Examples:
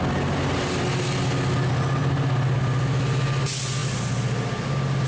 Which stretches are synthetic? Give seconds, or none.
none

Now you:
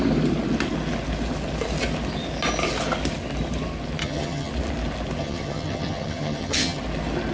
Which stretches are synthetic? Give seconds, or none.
4.0-4.5; 5.2-6.8